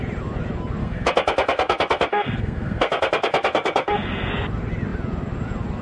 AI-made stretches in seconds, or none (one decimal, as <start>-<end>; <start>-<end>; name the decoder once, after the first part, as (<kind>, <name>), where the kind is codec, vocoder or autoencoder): 0.8-4.3 (codec, SNAC)